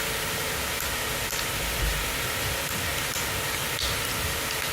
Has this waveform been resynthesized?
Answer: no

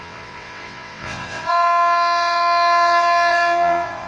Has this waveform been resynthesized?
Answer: yes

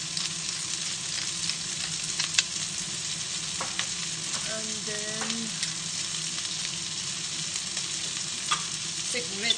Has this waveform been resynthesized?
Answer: no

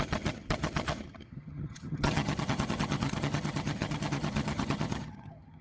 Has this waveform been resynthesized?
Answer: yes